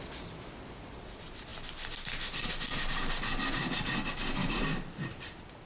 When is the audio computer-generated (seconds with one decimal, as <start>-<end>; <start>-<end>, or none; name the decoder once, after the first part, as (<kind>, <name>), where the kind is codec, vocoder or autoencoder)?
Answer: 4.4-5.0 (vocoder, BigVGAN v2)